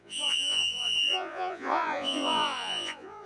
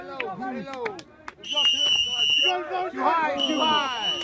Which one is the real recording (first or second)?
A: second